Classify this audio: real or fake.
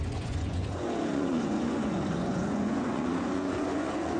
fake